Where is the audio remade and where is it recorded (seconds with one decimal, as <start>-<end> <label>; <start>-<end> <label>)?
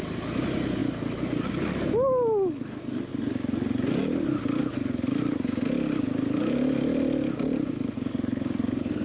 0.0-9.0 recorded